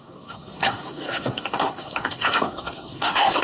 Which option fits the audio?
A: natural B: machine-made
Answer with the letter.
B